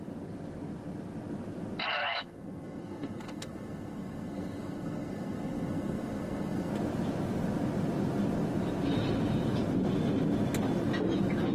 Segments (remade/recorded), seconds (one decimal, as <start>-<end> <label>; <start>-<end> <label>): 0.0-2.0 recorded; 2.0-6.7 remade; 6.7-11.5 recorded